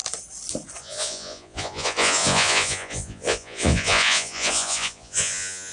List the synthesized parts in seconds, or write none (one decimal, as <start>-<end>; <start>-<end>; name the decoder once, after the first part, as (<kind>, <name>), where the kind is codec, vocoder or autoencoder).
0.8-5.7 (vocoder, Vocos)